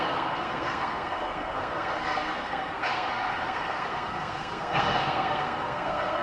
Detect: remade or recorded remade